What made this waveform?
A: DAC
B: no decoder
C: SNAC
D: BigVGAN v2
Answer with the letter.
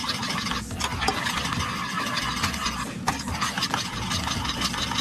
B